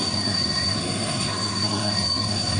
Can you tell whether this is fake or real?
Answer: fake